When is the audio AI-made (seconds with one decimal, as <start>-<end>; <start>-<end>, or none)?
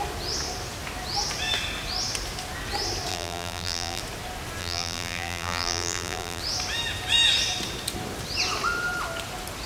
3.1-4.0; 4.6-6.4